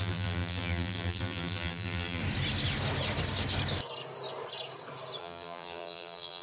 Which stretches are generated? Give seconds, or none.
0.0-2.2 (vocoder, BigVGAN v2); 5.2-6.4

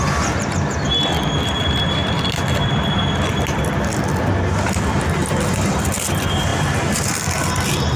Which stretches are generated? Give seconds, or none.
none